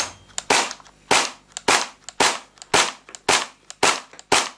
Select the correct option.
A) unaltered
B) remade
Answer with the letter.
A